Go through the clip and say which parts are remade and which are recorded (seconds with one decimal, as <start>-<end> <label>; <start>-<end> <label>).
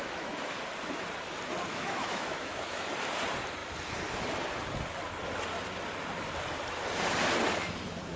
0.0-0.6 remade; 0.6-1.7 recorded; 1.7-2.9 remade; 2.9-8.2 recorded